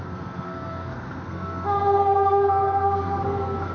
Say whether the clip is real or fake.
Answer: fake